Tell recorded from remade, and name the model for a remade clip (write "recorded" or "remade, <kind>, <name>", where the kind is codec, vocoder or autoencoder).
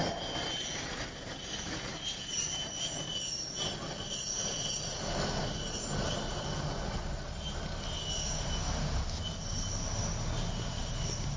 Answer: recorded